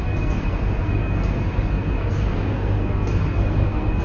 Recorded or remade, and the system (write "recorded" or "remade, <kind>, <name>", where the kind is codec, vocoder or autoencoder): remade, codec, SNAC